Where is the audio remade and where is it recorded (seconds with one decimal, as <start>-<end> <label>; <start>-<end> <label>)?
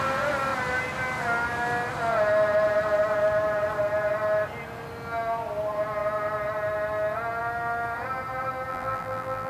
0.0-8.7 recorded; 8.7-9.5 remade